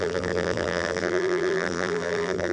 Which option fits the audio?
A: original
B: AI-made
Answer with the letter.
B